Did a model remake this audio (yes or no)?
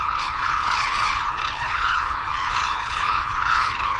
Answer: yes